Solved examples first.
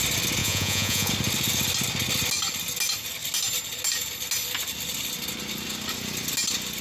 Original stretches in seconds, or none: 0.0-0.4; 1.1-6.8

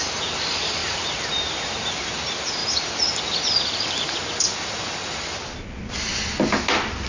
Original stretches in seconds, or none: 0.0-7.1

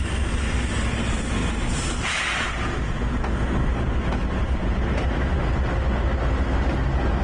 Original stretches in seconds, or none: 0.0-1.4; 3.0-3.7; 5.9-7.2

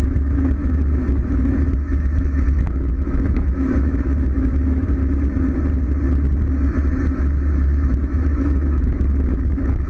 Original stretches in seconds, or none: 5.0-7.1